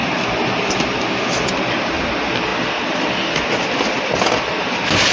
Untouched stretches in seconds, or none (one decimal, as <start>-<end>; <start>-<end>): 0.8-5.1